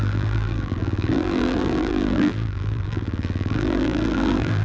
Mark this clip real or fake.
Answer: fake